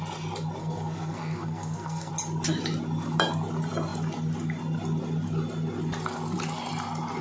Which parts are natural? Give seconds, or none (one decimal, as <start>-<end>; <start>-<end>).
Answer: 0.0-0.6; 2.1-7.2